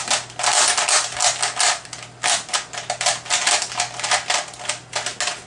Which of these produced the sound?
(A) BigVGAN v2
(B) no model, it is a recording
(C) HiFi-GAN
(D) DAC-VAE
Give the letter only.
B